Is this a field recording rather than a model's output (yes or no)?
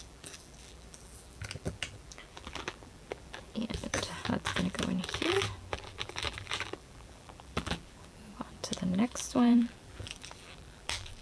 no